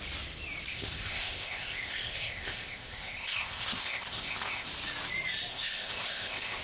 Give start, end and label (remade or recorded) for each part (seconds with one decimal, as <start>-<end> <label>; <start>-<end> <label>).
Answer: 0.0-0.7 recorded; 0.7-4.7 remade; 4.7-5.5 recorded; 5.5-6.6 remade